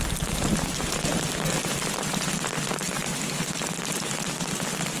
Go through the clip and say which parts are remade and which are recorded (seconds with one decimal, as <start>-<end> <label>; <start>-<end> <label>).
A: 0.0-3.0 remade; 3.0-3.9 recorded; 3.9-5.0 remade